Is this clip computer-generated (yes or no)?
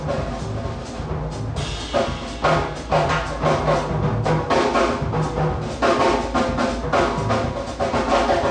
no